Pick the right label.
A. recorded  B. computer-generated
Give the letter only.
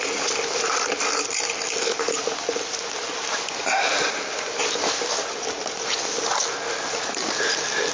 A